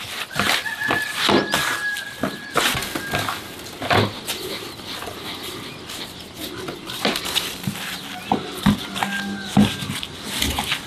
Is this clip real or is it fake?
real